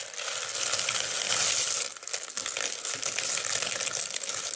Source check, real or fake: real